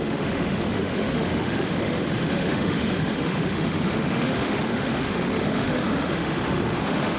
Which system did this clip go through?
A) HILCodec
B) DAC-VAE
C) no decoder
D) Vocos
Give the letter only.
B